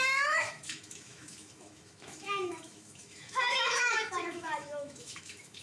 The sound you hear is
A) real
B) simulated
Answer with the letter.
B